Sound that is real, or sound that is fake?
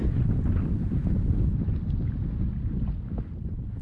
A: real